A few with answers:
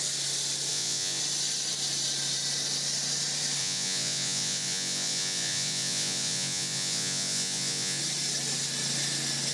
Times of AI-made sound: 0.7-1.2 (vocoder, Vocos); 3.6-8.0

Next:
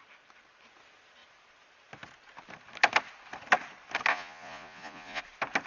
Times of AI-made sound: 4.1-5.2 (vocoder, Vocos)

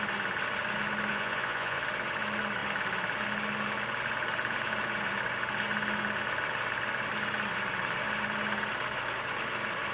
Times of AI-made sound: 1.1-1.8 (vocoder, Vocos)

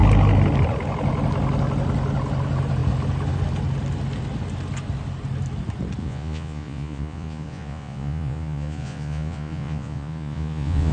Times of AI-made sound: 6.0-10.9 (vocoder, Vocos)

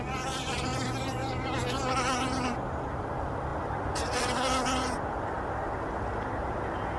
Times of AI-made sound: none

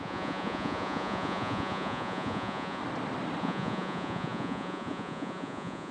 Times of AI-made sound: 0.0-2.8 (vocoder, Vocos); 3.4-5.9